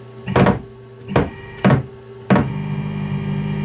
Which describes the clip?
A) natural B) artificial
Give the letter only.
A